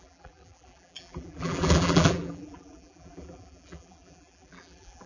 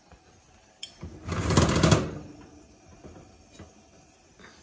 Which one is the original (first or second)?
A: second